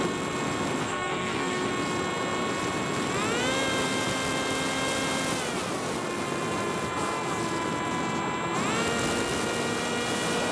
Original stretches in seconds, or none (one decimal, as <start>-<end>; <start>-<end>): 0.0-0.8; 1.7-10.5